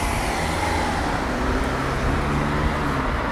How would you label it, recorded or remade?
recorded